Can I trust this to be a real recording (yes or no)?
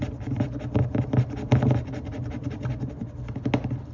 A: yes